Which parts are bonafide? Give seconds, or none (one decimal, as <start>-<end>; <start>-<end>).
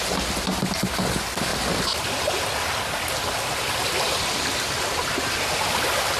0.0-6.2